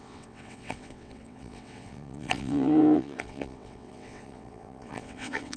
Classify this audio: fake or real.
fake